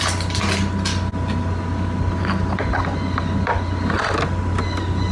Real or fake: real